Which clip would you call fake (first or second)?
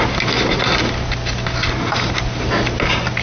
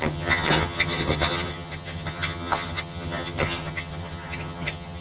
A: second